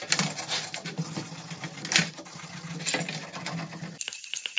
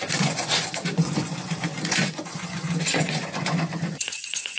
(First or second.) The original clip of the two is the first